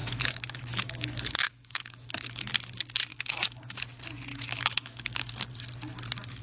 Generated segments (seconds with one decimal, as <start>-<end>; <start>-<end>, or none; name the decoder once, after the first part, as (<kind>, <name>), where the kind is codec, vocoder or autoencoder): 0.0-2.4 (autoencoder, DAC-VAE); 3.1-3.8; 4.3-5.3